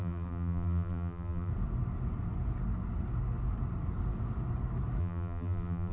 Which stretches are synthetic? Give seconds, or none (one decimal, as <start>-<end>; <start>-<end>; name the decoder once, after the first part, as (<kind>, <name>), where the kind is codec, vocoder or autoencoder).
0.0-1.5 (vocoder, BigVGAN v2); 5.0-5.9